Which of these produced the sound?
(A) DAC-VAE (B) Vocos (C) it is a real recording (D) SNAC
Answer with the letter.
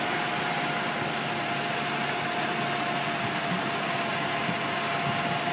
C